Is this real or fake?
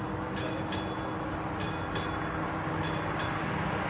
real